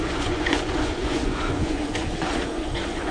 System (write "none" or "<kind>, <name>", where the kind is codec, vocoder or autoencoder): vocoder, Vocos